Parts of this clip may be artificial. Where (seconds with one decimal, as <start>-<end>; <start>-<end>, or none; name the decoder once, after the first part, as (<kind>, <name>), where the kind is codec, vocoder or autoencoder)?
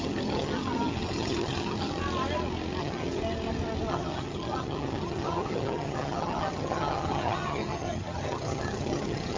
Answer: 0.0-2.0 (vocoder, HiFi-GAN); 2.8-3.2; 3.9-9.4